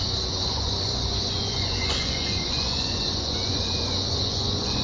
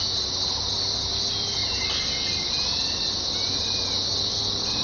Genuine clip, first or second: second